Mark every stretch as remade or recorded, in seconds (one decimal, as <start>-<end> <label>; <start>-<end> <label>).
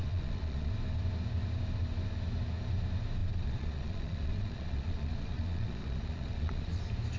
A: 0.0-0.7 remade; 0.7-3.2 recorded; 3.2-6.8 remade; 6.8-7.2 recorded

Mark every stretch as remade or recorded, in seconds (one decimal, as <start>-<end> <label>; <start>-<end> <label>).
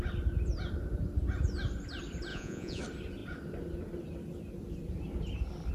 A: 0.0-2.3 recorded; 2.3-2.8 remade; 2.8-5.7 recorded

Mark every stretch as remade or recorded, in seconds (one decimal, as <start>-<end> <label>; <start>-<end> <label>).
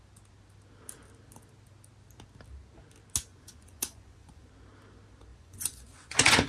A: 0.0-3.3 recorded; 3.3-4.5 remade; 4.5-5.3 recorded; 5.3-6.5 remade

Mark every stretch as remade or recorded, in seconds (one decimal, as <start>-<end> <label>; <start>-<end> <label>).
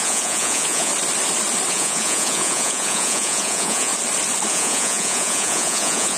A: 0.0-0.9 remade; 0.9-1.7 recorded; 1.7-3.9 remade; 3.9-4.5 recorded; 4.5-6.2 remade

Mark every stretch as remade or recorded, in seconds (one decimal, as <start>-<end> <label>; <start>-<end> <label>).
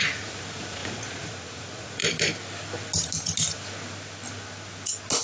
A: 0.0-2.0 remade; 2.0-5.2 recorded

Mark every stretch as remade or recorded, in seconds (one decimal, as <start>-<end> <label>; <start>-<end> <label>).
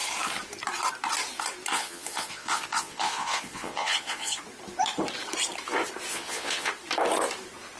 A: 0.0-1.7 recorded; 1.7-4.4 remade; 4.4-6.1 recorded; 6.1-6.7 remade; 6.7-7.8 recorded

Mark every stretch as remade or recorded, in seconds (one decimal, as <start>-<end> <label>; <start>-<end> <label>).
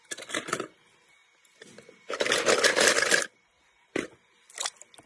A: 0.0-5.1 recorded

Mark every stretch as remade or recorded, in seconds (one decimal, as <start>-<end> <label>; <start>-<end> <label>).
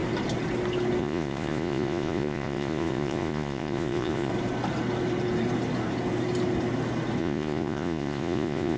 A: 0.0-1.0 recorded; 1.0-4.3 remade; 4.3-7.2 recorded; 7.2-8.8 remade